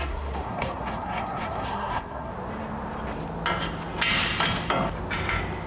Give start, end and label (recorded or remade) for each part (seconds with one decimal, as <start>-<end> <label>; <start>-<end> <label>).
0.0-2.3 remade; 2.3-5.7 recorded